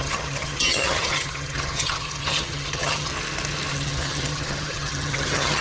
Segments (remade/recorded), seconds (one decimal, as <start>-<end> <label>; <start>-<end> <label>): 0.0-3.1 remade; 3.1-3.7 recorded; 3.7-5.6 remade

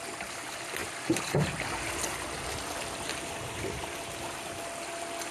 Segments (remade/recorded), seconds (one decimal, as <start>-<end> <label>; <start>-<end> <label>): 0.0-5.3 recorded

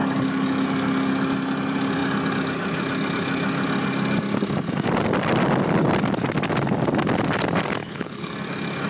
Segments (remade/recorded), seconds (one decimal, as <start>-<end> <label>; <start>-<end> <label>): 0.0-7.8 recorded; 7.8-8.3 remade; 8.3-8.9 recorded

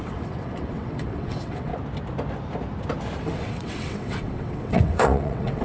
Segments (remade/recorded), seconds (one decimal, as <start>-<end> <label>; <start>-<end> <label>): 0.0-1.7 remade; 1.7-3.2 recorded; 3.2-5.6 remade

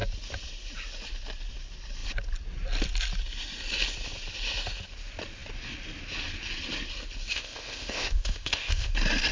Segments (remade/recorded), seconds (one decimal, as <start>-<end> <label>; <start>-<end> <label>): 0.0-7.3 recorded; 7.3-8.9 remade; 8.9-9.3 recorded

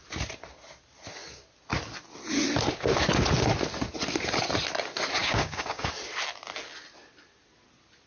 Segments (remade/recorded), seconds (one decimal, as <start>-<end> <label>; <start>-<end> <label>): 0.0-5.2 recorded; 5.2-5.9 remade; 5.9-8.1 recorded